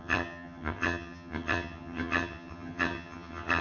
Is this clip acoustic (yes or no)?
no